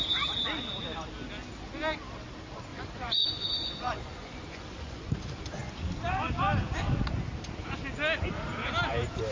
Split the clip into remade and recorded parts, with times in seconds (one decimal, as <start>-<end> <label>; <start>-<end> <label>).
0.0-2.7 recorded; 2.7-5.1 remade; 5.1-9.3 recorded